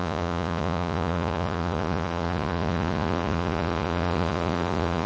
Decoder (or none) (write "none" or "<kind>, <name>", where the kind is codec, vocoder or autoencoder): vocoder, Vocos